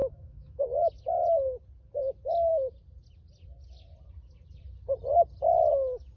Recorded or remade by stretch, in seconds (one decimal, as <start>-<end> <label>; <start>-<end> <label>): 0.0-0.6 remade; 0.6-6.2 recorded